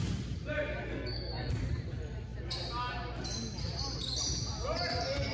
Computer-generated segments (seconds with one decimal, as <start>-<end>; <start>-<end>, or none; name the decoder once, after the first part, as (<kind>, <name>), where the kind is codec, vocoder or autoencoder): 0.9-1.5 (codec, SNAC)